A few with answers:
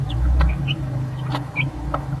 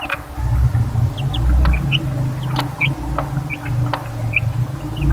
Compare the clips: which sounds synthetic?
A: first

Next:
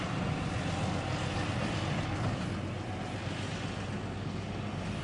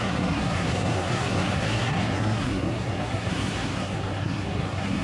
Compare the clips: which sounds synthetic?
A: second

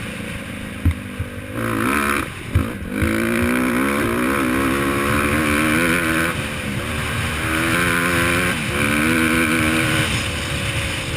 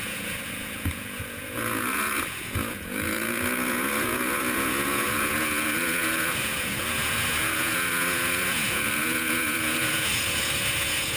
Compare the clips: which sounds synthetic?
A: second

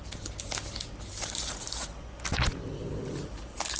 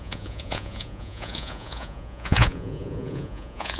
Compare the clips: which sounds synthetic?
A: second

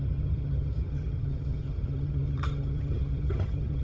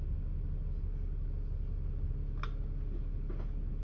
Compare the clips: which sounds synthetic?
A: first